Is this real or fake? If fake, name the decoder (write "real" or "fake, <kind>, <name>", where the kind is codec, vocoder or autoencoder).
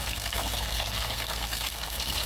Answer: fake, codec, SNAC